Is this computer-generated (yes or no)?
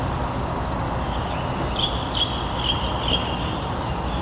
no